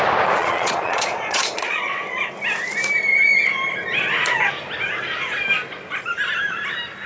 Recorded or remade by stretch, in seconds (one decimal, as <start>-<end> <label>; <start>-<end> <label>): 0.0-0.4 recorded; 0.4-2.0 remade; 2.0-7.1 recorded